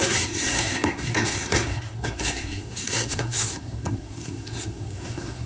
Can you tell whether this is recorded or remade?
remade